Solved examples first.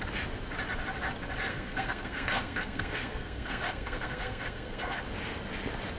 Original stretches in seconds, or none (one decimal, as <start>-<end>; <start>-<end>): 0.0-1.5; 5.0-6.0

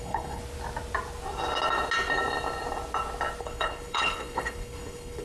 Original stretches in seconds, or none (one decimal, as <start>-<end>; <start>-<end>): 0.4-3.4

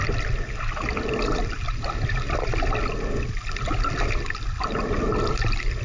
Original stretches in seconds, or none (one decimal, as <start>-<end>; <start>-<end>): 0.0-5.8

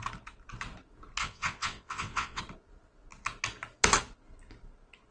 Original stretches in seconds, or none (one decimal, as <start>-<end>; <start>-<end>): 0.0-1.2; 2.4-5.1

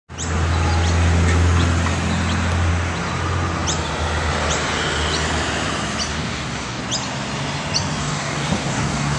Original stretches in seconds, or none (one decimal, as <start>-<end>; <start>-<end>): 0.0-6.1; 6.8-8.0